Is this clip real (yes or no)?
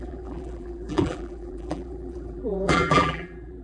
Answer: no